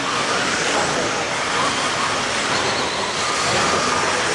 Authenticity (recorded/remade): recorded